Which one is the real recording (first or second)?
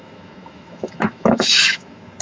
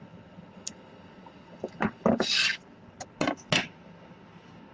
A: second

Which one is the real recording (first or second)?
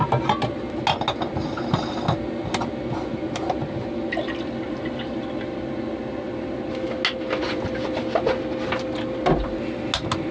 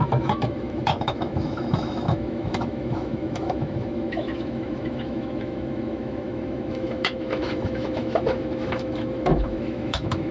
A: first